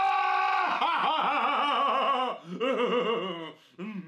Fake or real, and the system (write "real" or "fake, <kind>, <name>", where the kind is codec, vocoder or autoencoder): real